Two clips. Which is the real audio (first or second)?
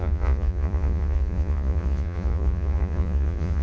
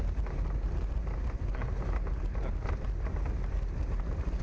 second